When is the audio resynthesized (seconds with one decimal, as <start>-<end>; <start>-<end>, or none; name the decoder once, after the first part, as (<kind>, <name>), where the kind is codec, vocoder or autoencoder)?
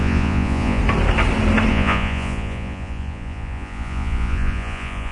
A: 0.0-0.8 (vocoder, Vocos); 1.7-5.1